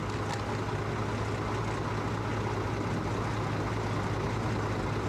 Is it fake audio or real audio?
real